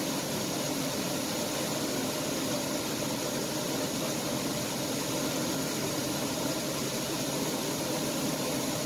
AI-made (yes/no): yes